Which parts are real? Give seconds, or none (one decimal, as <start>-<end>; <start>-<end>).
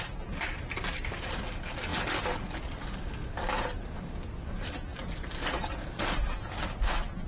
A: 0.0-7.3